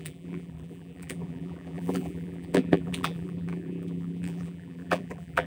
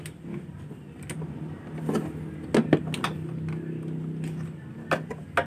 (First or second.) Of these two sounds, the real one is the second